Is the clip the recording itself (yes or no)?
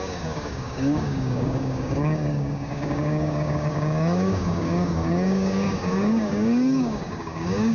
no